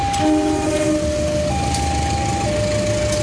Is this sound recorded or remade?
recorded